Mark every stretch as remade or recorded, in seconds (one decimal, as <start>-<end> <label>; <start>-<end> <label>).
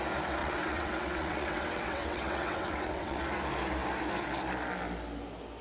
0.0-0.4 recorded; 0.4-3.2 remade; 3.2-5.6 recorded